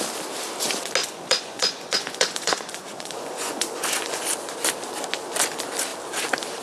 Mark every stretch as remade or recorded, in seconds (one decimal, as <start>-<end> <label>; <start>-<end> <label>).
0.0-1.0 recorded; 1.0-4.2 remade; 4.2-6.6 recorded

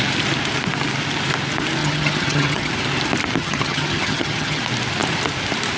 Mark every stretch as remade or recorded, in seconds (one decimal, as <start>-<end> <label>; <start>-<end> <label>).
0.0-1.8 recorded; 1.8-2.7 remade; 2.7-3.4 recorded; 3.4-4.6 remade; 4.6-5.8 recorded

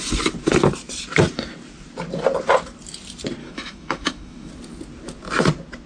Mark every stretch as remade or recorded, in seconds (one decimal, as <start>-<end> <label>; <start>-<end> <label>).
0.0-3.4 recorded; 3.4-4.5 remade; 4.5-5.9 recorded

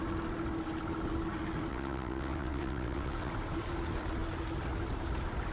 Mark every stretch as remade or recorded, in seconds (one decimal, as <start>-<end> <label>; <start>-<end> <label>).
0.0-1.7 recorded; 1.7-3.3 remade; 3.3-5.5 recorded

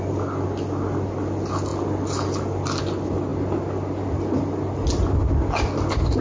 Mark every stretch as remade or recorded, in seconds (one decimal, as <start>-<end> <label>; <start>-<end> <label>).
0.0-6.2 recorded

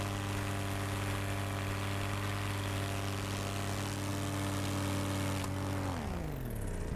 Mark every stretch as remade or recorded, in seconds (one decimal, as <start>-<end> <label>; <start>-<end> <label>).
0.0-7.0 recorded